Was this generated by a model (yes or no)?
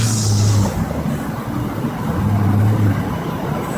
no